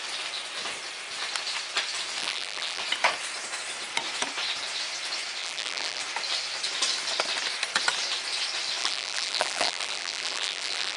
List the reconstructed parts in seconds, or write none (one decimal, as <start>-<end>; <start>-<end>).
2.2-2.8; 5.4-6.0; 8.8-11.0